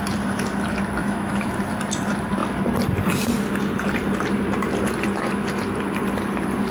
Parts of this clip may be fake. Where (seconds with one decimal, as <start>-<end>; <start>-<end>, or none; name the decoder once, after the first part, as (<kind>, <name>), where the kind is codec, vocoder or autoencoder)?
1.0-1.5 (autoencoder, DAC-VAE)